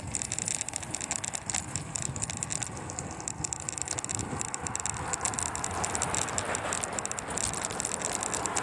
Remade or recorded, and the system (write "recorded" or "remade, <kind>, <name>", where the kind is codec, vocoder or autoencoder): recorded